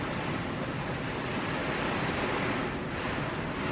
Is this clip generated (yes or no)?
no